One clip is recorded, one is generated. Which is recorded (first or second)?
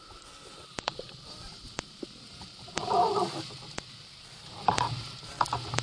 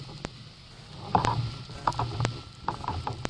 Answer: second